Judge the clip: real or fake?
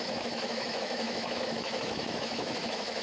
fake